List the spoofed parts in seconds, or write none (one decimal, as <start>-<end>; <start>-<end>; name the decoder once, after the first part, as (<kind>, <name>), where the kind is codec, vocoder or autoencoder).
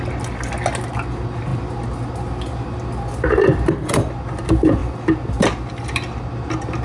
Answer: none